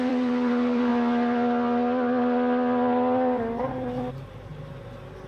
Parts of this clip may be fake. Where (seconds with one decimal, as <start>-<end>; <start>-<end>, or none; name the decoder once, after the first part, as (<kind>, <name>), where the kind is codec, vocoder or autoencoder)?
0.0-0.9 (vocoder, BigVGAN v2); 4.1-4.5

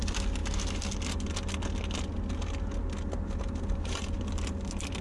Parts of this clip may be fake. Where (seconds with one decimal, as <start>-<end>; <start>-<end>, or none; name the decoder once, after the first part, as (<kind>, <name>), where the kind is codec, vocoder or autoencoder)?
0.0-0.4 (vocoder, BigVGAN v2); 3.4-5.0

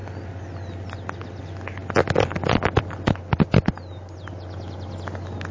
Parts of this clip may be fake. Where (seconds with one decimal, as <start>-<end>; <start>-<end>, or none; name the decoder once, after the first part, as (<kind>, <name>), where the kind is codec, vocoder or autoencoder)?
0.0-1.4 (vocoder, BigVGAN v2); 1.8-3.2

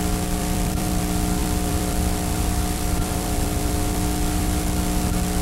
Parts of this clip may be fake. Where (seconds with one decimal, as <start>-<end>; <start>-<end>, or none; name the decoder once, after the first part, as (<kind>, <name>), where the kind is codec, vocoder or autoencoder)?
0.4-1.0 (vocoder, BigVGAN v2); 1.4-4.6